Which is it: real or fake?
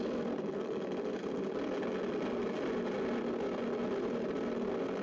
real